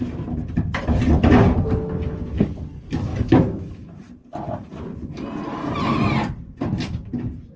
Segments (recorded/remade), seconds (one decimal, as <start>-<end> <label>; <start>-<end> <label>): 0.0-3.1 recorded; 3.1-4.1 remade; 4.1-7.6 recorded